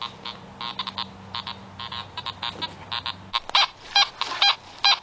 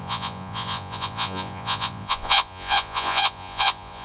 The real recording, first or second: first